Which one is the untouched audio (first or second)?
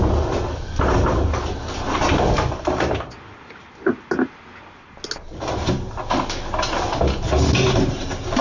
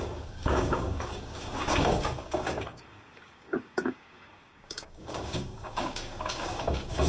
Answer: first